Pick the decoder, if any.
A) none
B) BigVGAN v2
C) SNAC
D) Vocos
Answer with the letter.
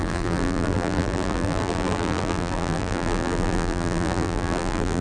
B